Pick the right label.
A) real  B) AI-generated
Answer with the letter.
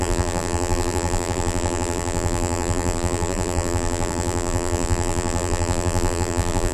B